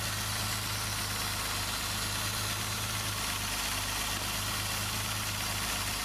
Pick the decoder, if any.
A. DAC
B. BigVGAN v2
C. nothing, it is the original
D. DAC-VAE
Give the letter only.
C